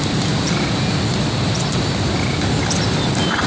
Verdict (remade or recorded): recorded